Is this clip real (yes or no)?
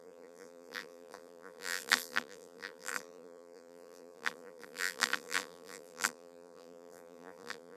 no